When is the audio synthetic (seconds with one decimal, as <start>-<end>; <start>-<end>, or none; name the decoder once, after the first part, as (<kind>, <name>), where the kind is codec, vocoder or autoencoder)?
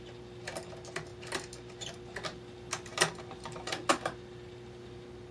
none